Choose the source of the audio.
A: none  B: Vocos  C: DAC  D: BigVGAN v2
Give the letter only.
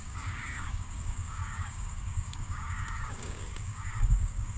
C